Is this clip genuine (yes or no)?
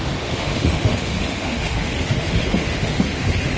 no